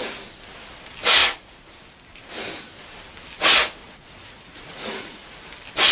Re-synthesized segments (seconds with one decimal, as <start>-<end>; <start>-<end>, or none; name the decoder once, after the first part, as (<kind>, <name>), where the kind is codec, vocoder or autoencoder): 3.8-5.3 (vocoder, Vocos)